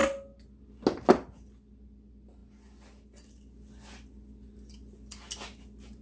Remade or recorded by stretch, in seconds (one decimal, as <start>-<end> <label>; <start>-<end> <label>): 0.0-6.0 recorded